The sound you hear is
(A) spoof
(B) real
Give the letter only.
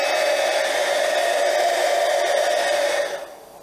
B